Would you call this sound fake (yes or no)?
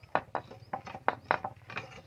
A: no